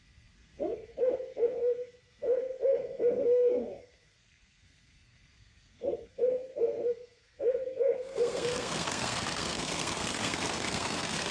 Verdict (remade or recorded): remade